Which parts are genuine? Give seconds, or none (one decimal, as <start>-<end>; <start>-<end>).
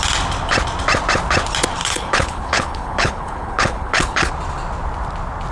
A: 0.0-1.8; 4.3-5.5